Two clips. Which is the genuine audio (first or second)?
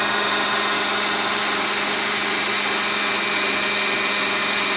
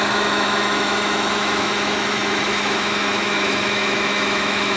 first